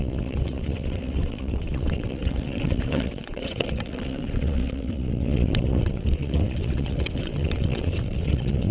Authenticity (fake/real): fake